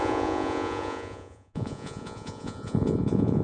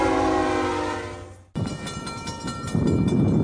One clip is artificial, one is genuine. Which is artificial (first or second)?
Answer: first